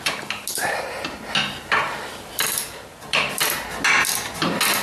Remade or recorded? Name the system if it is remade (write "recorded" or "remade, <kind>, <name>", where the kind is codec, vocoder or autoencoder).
recorded